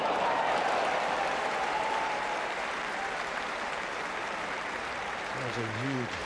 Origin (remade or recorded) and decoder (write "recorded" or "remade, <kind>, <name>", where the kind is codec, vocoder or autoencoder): remade, vocoder, BigVGAN v2